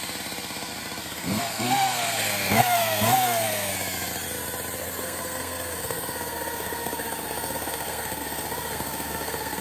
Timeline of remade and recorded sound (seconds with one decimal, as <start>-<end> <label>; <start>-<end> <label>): 0.0-1.0 recorded; 1.0-3.7 remade; 3.7-4.8 recorded; 4.8-9.6 remade